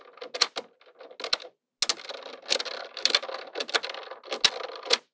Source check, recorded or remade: recorded